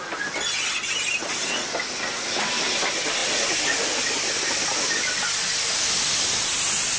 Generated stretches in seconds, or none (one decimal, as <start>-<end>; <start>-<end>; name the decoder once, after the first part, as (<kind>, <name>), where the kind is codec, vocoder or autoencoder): none